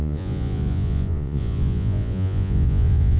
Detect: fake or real fake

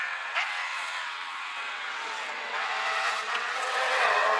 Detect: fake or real fake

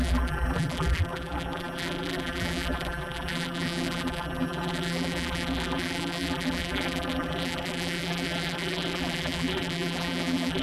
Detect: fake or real fake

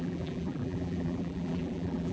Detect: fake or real fake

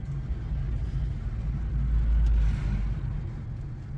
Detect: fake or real real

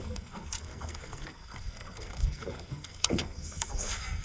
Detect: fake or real fake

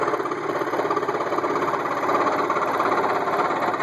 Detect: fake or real real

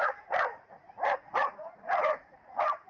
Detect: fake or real fake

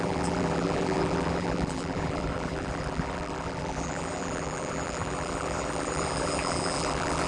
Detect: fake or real fake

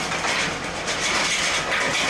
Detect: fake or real real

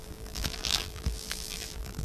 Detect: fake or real fake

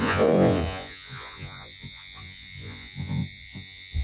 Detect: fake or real fake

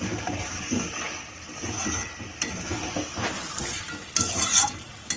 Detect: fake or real real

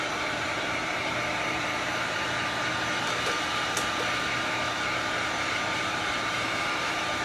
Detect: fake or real fake